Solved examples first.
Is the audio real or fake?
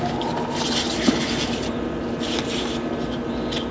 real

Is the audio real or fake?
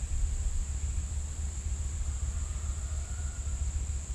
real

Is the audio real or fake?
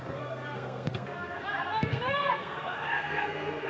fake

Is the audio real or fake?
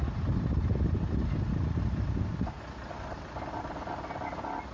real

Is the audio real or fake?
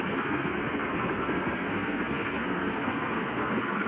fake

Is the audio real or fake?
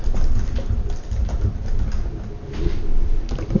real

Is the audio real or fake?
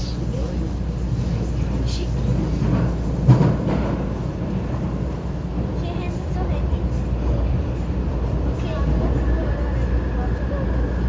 real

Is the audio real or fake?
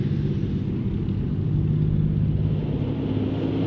real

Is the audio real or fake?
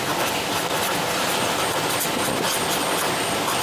real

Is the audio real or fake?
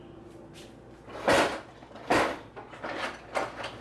real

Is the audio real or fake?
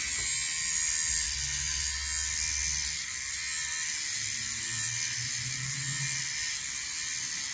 real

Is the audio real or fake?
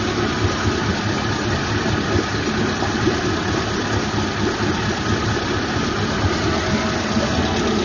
real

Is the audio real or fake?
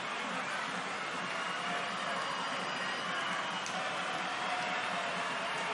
real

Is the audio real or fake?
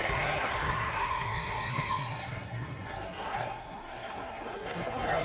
fake